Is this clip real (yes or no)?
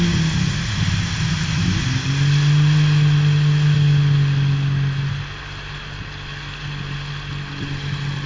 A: yes